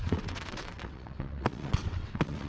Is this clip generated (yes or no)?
yes